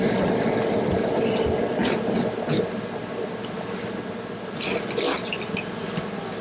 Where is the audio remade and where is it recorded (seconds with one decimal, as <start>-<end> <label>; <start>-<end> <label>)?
0.0-6.4 recorded